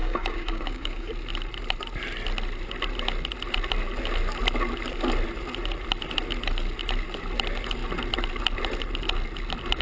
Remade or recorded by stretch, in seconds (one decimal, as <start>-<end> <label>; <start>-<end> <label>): 0.0-1.1 remade; 1.1-9.8 recorded